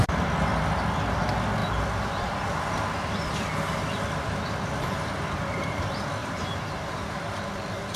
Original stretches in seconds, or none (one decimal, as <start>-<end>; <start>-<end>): 0.0-6.2; 7.3-8.0

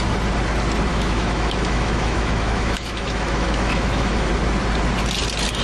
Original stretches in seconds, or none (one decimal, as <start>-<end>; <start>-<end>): 0.0-0.9; 4.3-5.6

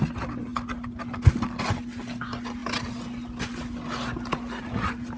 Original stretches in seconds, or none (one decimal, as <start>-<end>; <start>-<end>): 0.0-5.2